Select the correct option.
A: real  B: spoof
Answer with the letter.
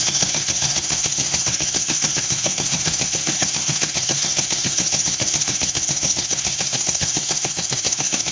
B